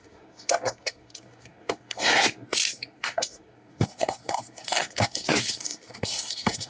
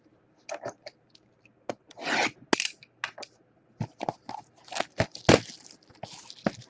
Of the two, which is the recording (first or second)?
second